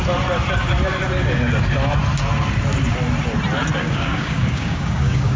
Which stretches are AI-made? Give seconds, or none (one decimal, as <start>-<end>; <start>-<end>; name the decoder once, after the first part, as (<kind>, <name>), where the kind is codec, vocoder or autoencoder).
3.8-5.4 (codec, DAC)